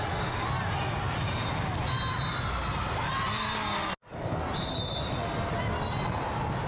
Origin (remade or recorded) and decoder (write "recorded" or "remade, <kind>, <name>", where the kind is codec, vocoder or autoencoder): recorded